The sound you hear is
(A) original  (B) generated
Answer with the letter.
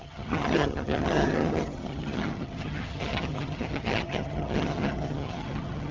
B